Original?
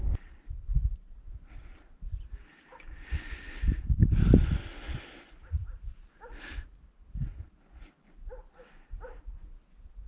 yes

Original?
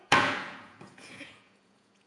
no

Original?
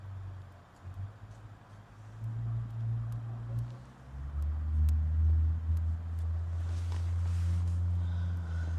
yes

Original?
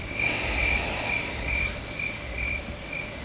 yes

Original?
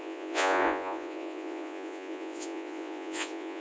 no